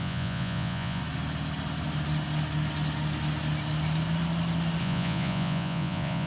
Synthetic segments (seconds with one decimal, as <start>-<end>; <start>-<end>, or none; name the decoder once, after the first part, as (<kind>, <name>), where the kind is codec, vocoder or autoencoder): 0.0-1.0 (vocoder, Vocos); 4.8-6.3